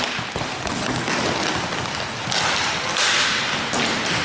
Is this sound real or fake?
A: real